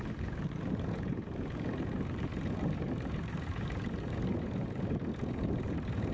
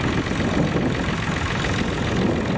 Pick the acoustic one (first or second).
second